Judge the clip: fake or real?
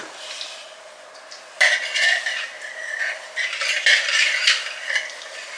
real